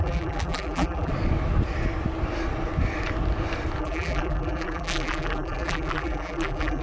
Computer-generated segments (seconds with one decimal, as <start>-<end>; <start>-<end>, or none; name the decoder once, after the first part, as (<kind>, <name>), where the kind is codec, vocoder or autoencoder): 0.0-1.1 (vocoder, BigVGAN v2); 3.8-6.8